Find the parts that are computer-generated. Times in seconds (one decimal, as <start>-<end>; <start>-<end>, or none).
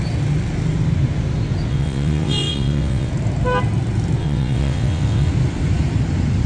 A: 1.7-3.1; 4.2-5.3